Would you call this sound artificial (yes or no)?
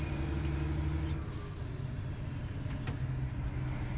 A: no